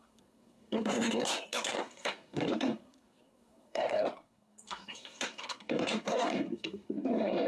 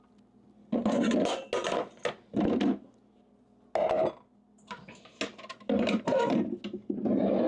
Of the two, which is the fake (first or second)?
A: first